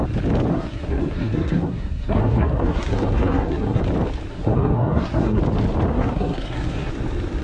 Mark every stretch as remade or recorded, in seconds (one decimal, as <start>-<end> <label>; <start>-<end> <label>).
0.0-0.5 recorded; 0.5-3.8 remade; 3.8-4.3 recorded; 4.3-5.4 remade; 5.4-5.9 recorded; 5.9-6.9 remade; 6.9-7.4 recorded